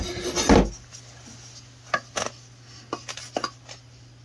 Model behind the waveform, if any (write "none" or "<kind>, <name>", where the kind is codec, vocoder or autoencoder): none